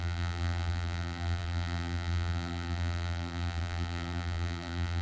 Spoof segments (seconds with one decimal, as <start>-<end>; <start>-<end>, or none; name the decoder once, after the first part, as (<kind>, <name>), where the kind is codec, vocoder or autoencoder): 0.0-5.0 (vocoder, BigVGAN v2)